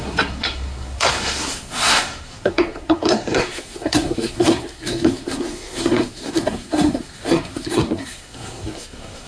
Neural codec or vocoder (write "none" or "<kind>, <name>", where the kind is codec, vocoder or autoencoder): codec, SNAC